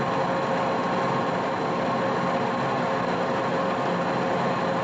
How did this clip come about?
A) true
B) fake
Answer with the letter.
A